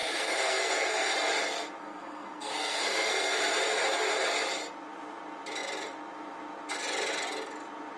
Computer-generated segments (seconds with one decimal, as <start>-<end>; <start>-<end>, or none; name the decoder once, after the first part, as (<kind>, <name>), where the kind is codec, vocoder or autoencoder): 0.0-1.1 (codec, SNAC); 1.8-3.4